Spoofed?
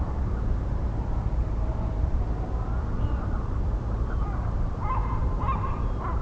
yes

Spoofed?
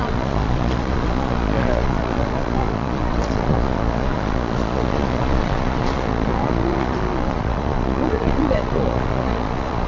yes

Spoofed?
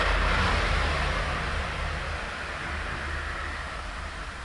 no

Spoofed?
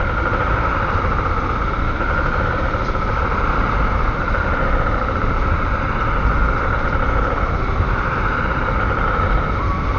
no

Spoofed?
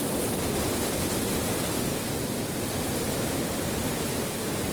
no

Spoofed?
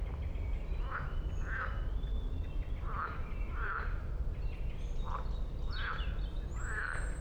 yes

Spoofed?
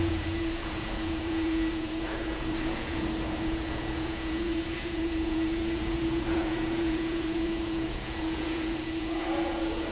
yes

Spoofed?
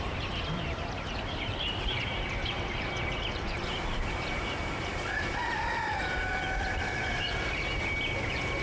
yes